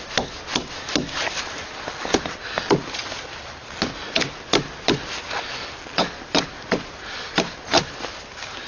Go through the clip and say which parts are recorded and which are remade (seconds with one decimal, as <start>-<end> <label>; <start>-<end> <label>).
0.0-8.7 recorded